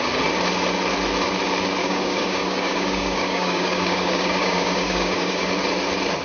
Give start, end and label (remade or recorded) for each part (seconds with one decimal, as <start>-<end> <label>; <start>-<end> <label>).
0.0-1.8 recorded; 1.8-5.5 remade; 5.5-6.2 recorded